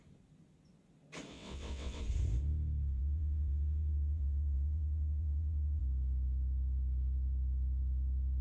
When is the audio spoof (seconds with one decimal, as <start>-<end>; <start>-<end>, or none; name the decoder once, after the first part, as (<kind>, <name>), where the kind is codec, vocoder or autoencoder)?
1.3-2.0 (vocoder, WaveNeXt); 3.0-5.8